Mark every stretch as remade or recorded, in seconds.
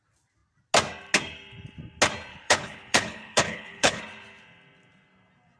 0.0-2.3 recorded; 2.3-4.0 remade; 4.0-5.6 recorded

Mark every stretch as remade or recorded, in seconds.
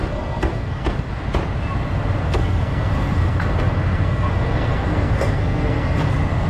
0.0-1.1 remade; 1.1-2.2 recorded; 2.2-6.1 remade; 6.1-6.5 recorded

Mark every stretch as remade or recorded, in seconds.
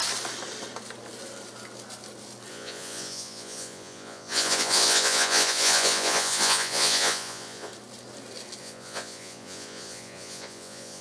0.0-2.5 recorded; 2.5-7.7 remade; 7.7-8.6 recorded; 8.6-11.0 remade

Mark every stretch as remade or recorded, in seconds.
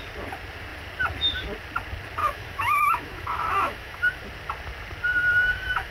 0.0-2.2 recorded; 2.2-4.2 remade; 4.2-5.1 recorded; 5.1-5.9 remade